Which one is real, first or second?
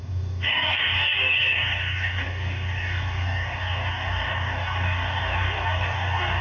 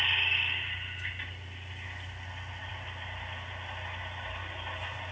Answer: second